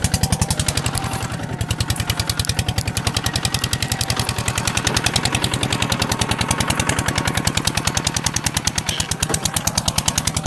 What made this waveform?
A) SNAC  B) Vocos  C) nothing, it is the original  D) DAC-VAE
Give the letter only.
C